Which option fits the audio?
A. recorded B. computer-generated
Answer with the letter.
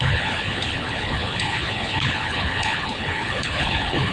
B